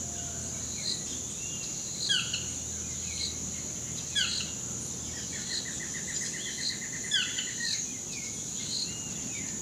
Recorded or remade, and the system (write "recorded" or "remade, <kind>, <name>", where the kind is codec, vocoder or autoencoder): recorded